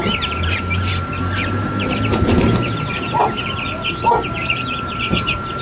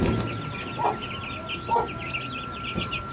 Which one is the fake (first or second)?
first